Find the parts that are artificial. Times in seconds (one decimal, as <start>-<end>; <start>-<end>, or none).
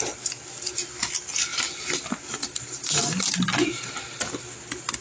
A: none